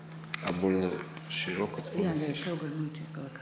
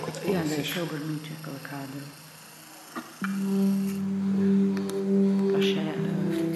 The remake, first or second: first